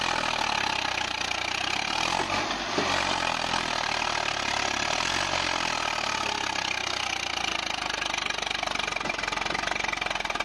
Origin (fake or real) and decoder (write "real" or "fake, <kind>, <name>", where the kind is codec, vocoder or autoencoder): real